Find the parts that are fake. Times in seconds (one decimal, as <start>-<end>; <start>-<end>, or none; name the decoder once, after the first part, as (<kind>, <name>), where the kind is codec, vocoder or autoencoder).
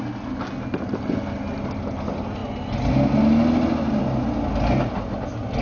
none